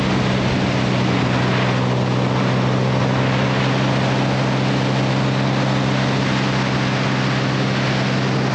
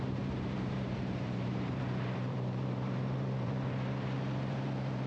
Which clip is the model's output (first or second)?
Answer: second